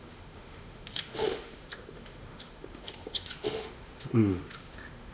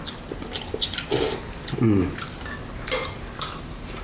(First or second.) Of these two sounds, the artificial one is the first